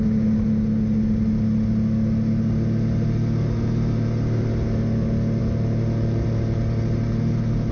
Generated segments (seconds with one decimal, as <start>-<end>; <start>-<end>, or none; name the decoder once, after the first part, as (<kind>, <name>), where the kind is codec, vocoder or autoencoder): none